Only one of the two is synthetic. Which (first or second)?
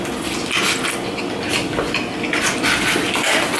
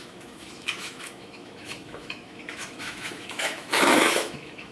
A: second